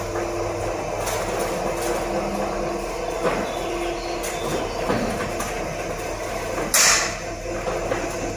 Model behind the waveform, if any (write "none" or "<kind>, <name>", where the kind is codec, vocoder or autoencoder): none